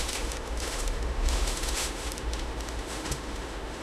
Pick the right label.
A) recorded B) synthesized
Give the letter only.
B